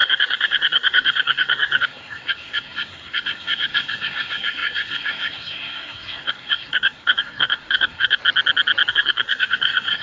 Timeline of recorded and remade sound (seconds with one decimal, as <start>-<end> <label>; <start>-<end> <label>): 0.0-8.2 remade; 8.2-8.9 recorded; 8.9-10.0 remade

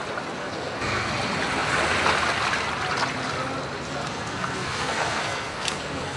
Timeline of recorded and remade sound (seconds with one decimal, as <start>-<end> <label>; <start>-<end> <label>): 0.0-0.4 recorded; 0.4-1.1 remade; 1.1-3.9 recorded; 3.9-6.2 remade

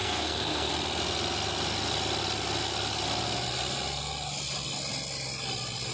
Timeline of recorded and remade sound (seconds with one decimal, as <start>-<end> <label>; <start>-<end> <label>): 0.0-0.7 remade; 0.7-5.9 recorded

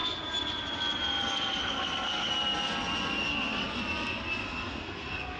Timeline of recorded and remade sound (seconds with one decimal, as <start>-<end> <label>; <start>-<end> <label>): 0.0-1.6 recorded; 1.6-2.3 remade; 2.3-3.2 recorded; 3.2-3.8 remade; 3.8-4.4 recorded; 4.4-5.4 remade

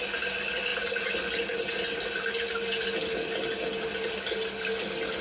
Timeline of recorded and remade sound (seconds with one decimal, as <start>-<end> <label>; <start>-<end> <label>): 0.0-5.2 recorded